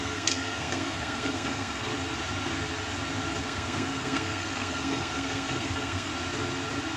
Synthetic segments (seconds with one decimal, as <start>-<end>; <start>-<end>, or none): 0.0-1.9; 3.4-6.1